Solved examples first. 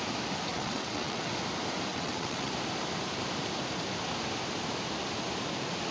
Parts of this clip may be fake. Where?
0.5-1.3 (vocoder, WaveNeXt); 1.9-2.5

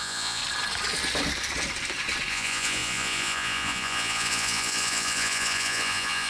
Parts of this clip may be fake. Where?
0.0-0.4 (vocoder, Vocos); 2.3-6.3

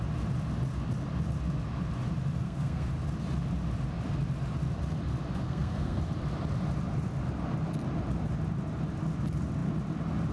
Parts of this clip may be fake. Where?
2.4-2.9 (codec, SNAC); 5.4-6.0

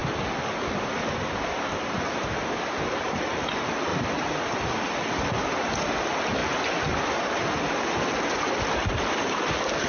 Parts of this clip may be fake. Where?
3.0-3.9 (vocoder, BigVGAN v2); 5.7-6.4; 8.3-9.9

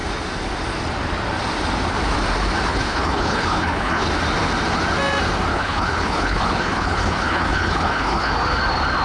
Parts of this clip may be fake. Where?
2.7-4.1 (codec, HILCodec); 5.5-8.3